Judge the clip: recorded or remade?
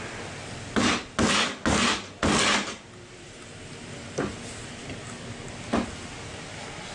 recorded